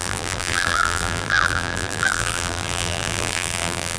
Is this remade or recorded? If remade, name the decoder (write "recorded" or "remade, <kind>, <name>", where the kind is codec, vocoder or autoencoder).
remade, vocoder, BigVGAN v2